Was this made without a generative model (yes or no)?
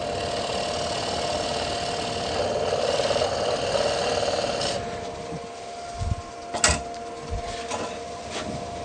yes